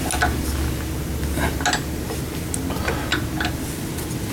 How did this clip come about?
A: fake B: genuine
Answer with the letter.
B